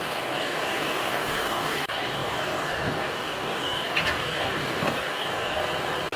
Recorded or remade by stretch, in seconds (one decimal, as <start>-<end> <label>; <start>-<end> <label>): 0.0-5.6 remade; 5.6-6.2 recorded